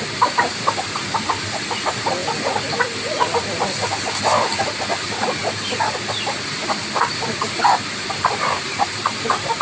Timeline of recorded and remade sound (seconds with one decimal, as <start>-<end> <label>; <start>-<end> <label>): 0.0-2.2 remade; 2.2-6.3 recorded; 6.3-9.6 remade